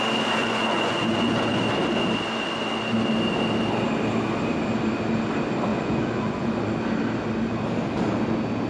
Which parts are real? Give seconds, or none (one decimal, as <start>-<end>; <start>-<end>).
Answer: 0.0-0.4; 1.6-5.7; 6.7-8.7